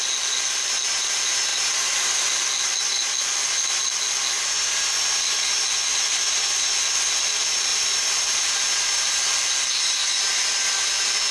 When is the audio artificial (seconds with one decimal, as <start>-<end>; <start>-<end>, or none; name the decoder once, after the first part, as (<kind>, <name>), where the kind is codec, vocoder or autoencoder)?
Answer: 7.7-9.1 (vocoder, BigVGAN v2)